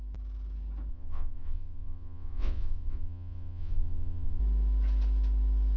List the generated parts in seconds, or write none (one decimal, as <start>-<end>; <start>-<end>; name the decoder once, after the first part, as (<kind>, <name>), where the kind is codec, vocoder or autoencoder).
0.9-4.4 (vocoder, WaveNeXt)